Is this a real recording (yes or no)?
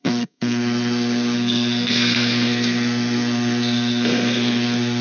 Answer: no